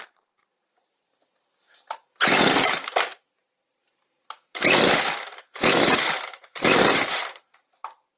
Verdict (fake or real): fake